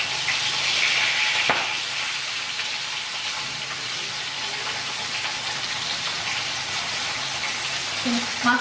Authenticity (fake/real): real